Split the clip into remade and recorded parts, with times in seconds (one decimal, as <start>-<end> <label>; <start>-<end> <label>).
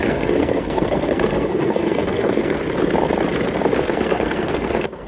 0.0-2.6 remade; 2.6-3.8 recorded; 3.8-5.1 remade